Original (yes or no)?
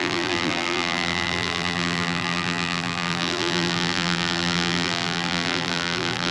no